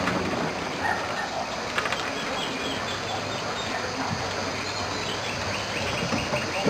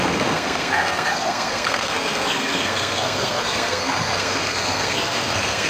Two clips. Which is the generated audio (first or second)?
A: second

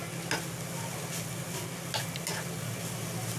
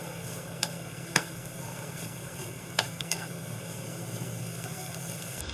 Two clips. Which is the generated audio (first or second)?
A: second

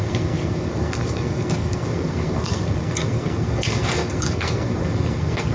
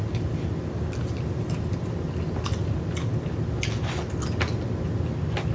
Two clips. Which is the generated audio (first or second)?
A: first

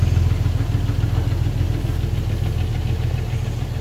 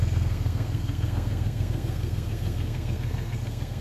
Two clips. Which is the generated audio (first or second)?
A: second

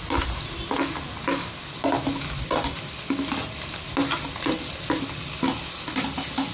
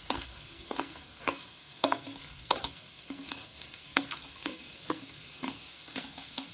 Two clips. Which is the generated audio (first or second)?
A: second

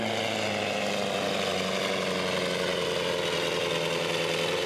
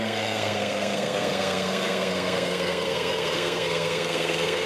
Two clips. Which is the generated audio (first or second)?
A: second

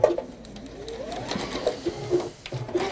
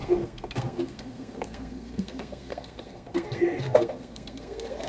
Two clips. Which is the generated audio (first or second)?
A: second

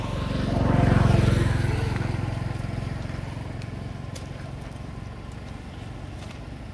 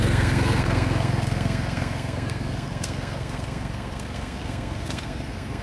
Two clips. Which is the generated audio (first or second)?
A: second